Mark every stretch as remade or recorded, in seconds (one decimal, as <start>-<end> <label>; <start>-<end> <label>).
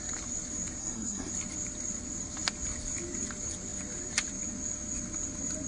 0.0-0.8 recorded; 0.8-1.3 remade; 1.3-5.7 recorded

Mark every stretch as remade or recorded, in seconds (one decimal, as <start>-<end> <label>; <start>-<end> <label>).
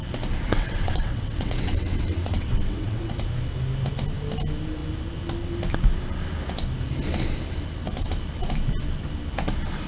0.0-0.5 recorded; 0.5-3.1 remade; 3.1-9.9 recorded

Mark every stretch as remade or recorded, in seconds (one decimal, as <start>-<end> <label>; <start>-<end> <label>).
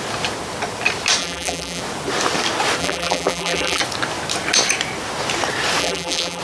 0.0-1.2 recorded; 1.2-1.8 remade; 1.8-2.8 recorded; 2.8-3.8 remade; 3.8-5.8 recorded; 5.8-6.4 remade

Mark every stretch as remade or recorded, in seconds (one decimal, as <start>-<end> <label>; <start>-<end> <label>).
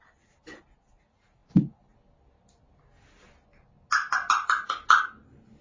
0.0-5.6 recorded